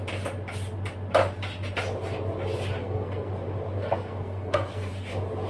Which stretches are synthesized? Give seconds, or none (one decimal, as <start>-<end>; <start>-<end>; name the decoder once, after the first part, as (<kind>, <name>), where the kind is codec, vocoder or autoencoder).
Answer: 2.8-3.3 (codec, SNAC); 3.8-4.9